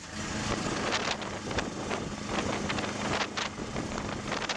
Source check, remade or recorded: recorded